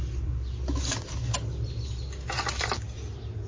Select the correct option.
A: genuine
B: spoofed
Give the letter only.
A